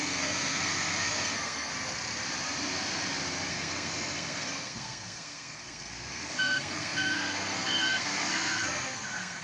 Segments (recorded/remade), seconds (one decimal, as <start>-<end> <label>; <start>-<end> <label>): 0.0-1.7 remade; 1.7-3.5 recorded; 3.5-9.4 remade

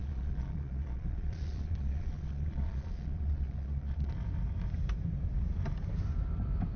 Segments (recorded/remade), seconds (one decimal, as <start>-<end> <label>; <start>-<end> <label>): 0.0-4.1 remade; 4.1-6.8 recorded